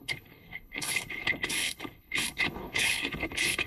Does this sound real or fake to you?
fake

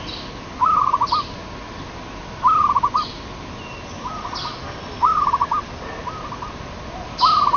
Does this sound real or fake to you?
real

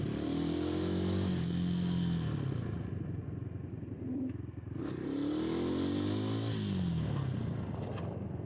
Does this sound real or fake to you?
real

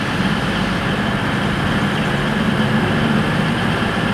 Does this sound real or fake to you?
fake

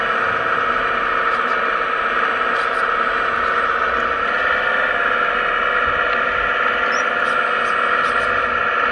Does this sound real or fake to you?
real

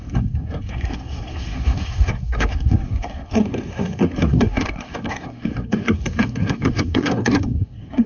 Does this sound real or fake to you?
fake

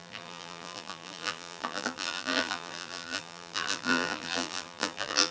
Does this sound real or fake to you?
fake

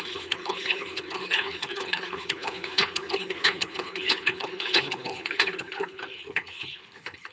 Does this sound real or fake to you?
fake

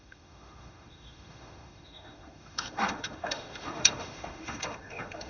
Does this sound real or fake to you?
fake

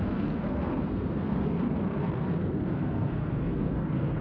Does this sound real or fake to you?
fake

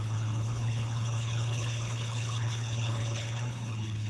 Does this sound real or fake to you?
fake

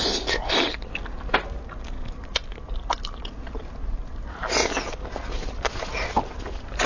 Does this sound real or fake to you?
real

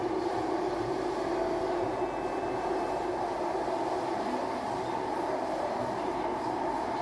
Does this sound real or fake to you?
real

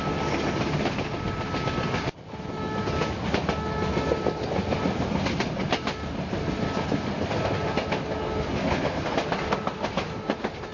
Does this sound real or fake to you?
real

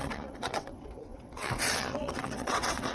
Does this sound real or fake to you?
fake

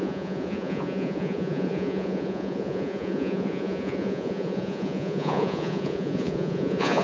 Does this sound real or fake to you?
fake